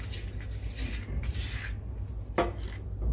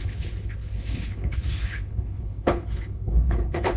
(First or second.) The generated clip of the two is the second